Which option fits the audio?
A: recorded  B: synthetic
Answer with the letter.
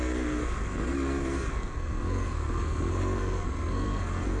B